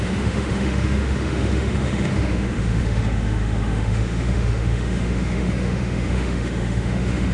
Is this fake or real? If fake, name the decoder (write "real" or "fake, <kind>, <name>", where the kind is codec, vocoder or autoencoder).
fake, autoencoder, DAC-VAE